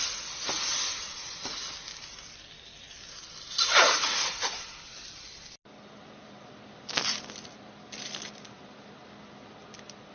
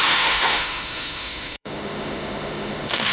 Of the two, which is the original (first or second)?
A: first